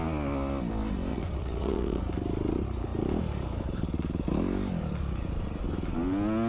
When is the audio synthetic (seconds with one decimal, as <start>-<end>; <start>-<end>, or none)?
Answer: 1.1-2.0